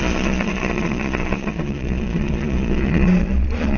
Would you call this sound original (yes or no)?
no